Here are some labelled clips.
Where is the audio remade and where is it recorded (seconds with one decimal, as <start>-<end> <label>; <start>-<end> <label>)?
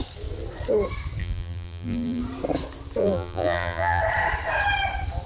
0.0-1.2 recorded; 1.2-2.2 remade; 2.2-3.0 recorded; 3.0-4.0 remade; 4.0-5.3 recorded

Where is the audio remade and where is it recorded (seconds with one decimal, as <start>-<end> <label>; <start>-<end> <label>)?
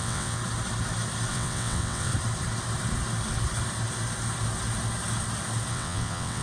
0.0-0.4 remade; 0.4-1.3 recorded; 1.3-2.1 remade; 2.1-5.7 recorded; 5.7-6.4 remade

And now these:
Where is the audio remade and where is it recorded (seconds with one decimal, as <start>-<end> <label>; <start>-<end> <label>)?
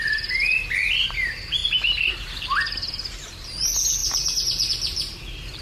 0.0-1.6 remade; 1.6-2.1 recorded; 2.1-5.6 remade